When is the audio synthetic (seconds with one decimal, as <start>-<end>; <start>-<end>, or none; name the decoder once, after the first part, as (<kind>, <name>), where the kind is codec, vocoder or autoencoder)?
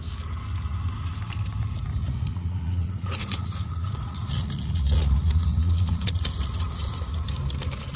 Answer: 2.0-6.3 (vocoder, Vocos)